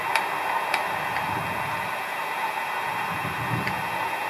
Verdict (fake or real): fake